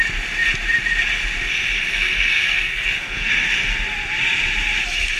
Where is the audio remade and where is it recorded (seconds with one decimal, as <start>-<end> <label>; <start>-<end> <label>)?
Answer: 0.0-1.9 recorded; 1.9-3.3 remade; 3.3-5.2 recorded